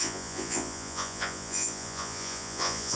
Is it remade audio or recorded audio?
remade